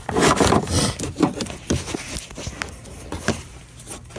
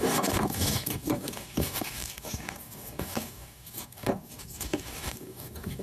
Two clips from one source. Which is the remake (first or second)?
second